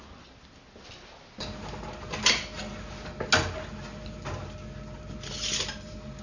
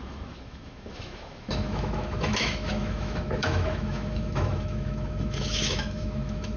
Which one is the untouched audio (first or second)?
first